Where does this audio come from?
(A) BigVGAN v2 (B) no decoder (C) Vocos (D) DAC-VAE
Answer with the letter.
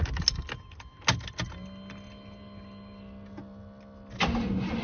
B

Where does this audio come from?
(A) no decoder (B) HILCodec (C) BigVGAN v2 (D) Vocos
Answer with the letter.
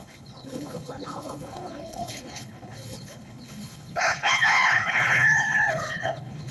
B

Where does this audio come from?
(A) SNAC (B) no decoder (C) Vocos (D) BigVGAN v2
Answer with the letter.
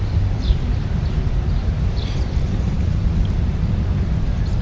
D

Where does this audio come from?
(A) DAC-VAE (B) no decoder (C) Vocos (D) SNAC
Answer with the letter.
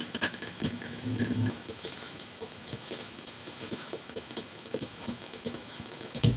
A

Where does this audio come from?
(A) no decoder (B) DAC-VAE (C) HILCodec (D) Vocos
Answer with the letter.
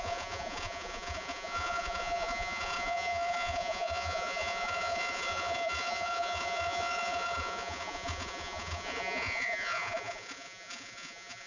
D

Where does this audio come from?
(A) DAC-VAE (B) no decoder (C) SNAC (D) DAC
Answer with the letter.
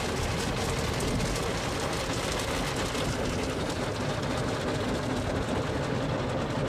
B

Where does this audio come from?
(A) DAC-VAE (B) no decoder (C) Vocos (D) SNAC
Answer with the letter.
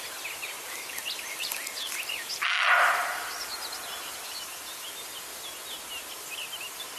B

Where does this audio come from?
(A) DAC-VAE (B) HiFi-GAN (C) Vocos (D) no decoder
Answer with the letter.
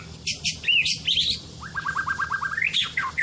D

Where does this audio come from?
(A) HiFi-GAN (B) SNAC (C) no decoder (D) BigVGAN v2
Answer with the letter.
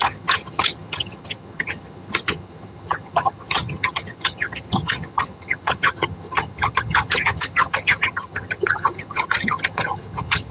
A